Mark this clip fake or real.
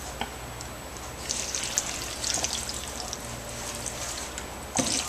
real